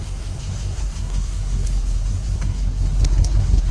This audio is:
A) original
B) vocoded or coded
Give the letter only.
B